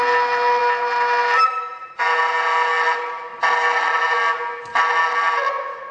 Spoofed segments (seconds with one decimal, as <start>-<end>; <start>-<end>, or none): none